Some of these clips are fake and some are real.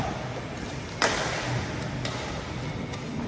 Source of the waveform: real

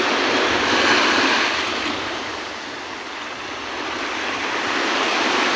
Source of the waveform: real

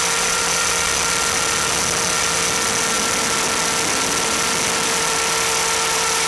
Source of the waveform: real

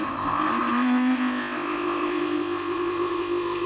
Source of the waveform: fake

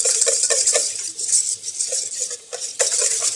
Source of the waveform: real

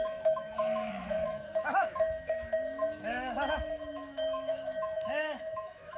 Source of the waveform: fake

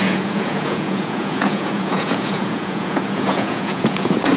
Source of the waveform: fake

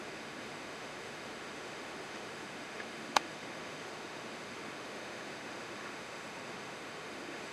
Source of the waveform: fake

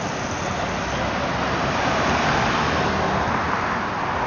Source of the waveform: real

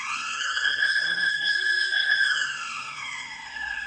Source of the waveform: fake